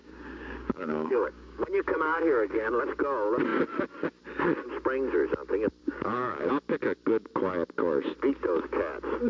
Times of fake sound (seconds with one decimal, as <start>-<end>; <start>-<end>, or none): 0.0-2.8; 5.8-6.5